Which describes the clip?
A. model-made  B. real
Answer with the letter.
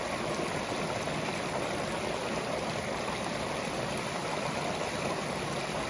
B